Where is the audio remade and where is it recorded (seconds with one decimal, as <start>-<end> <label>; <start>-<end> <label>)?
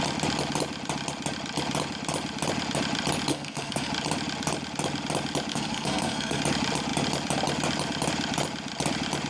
0.0-3.3 recorded; 3.3-3.9 remade; 3.9-5.5 recorded; 5.5-6.4 remade; 6.4-9.3 recorded